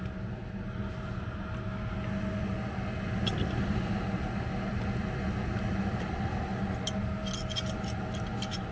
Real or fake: real